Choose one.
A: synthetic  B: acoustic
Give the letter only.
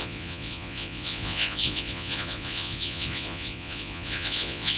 A